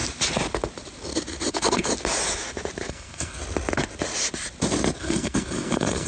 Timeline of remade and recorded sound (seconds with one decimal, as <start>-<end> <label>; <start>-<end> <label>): 0.0-1.5 recorded; 1.5-1.9 remade; 1.9-2.9 recorded; 2.9-3.4 remade; 3.4-5.0 recorded; 5.0-6.1 remade